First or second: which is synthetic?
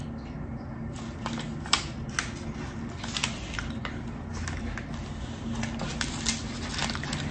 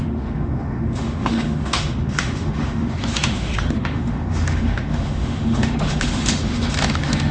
second